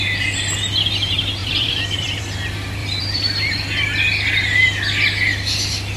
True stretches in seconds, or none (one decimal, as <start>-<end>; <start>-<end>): 0.0-1.4; 2.2-2.8; 3.5-6.0